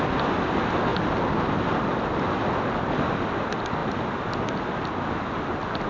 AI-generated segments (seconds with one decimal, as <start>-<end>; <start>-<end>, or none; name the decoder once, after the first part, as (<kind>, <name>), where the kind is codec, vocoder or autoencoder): none